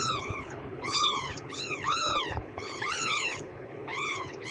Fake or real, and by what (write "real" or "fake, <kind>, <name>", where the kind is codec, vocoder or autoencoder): fake, codec, HILCodec